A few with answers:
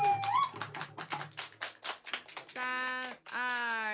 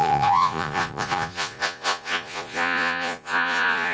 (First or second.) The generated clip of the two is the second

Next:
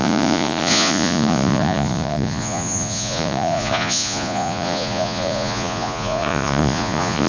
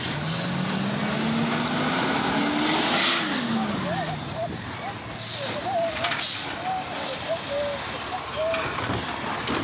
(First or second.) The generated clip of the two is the first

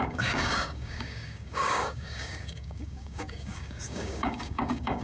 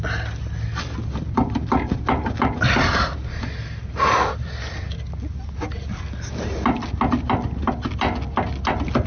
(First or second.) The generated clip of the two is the first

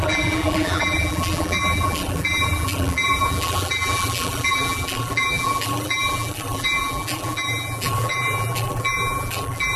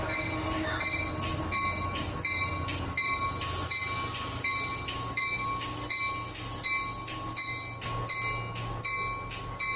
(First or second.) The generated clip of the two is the first